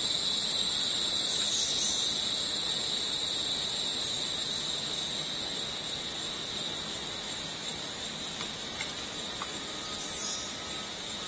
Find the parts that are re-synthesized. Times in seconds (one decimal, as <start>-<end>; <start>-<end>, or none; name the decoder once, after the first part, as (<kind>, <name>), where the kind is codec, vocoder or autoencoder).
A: none